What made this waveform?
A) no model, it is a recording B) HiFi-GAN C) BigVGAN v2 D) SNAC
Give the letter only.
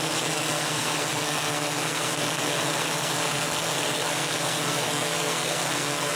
D